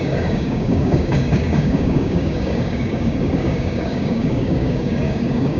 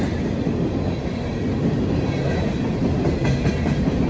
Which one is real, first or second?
second